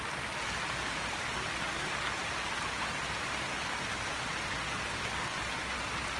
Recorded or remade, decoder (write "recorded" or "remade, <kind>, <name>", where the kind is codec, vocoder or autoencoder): recorded